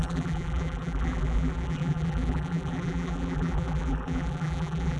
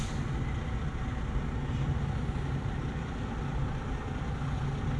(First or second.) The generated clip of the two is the first